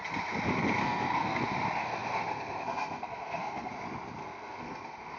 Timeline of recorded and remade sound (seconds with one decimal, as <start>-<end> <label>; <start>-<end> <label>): 0.0-0.8 recorded; 0.8-1.4 remade; 1.4-1.8 recorded; 1.8-3.7 remade; 3.7-4.2 recorded; 4.2-5.2 remade